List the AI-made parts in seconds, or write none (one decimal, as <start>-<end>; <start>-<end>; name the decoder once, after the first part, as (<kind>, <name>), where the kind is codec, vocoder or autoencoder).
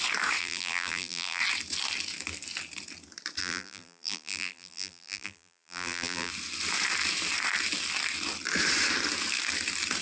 0.4-1.4 (vocoder, BigVGAN v2); 3.4-6.3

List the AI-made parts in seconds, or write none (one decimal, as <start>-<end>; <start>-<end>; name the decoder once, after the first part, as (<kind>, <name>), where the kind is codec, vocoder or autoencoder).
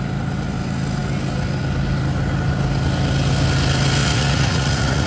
4.0-5.1 (vocoder, Vocos)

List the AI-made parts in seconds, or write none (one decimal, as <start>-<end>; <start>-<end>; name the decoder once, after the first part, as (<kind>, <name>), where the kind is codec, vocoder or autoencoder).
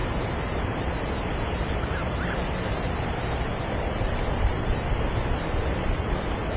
1.6-6.6 (vocoder, BigVGAN v2)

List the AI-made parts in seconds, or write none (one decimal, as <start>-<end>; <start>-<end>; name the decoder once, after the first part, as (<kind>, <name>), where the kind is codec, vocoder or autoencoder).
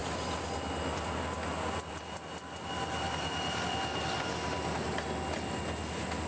none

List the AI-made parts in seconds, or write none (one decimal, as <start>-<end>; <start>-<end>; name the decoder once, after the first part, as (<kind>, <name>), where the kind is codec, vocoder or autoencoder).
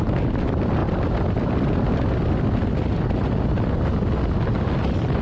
none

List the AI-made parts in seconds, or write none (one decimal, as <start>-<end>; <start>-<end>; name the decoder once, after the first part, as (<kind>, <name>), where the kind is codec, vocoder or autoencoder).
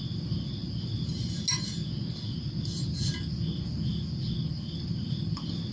none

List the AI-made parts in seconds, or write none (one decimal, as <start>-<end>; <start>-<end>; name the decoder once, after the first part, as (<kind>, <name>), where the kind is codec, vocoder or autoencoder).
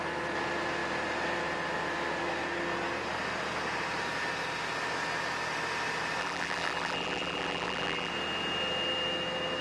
6.2-8.1 (vocoder, BigVGAN v2)